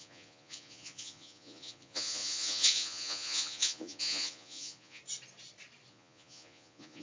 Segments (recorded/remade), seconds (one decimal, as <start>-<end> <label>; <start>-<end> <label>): 0.0-5.0 remade; 5.0-5.9 recorded; 5.9-7.0 remade